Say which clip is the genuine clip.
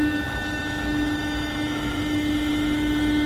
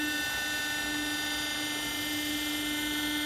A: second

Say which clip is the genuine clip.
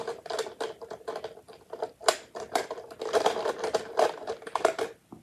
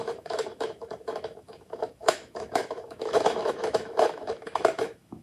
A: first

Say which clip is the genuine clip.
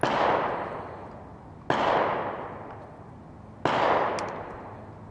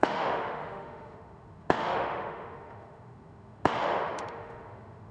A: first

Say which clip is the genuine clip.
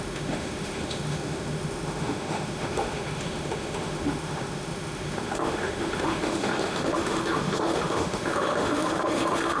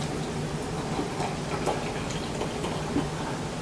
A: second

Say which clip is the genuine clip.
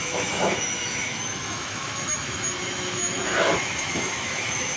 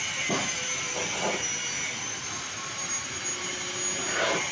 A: second